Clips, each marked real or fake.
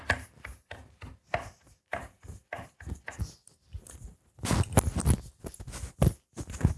real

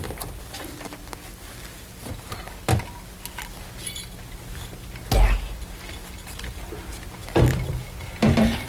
real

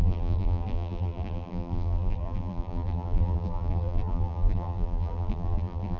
fake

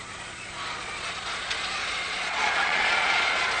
fake